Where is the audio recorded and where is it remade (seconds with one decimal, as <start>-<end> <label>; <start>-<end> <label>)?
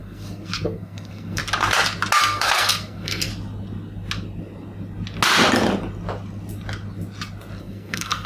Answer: 0.0-1.4 remade; 1.4-2.2 recorded; 2.2-3.3 remade; 3.3-7.6 recorded; 7.6-8.3 remade